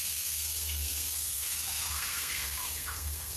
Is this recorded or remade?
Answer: remade